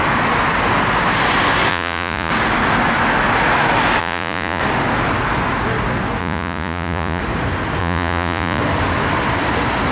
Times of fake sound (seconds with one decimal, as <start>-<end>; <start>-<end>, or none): 1.7-2.3; 4.0-4.6; 6.2-7.2; 7.8-8.6